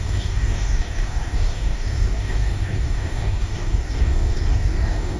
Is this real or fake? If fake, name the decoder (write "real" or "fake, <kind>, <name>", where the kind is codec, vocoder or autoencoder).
fake, codec, DAC